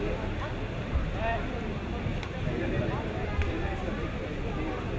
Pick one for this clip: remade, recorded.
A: recorded